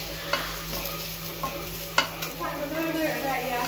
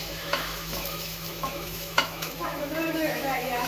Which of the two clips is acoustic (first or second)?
first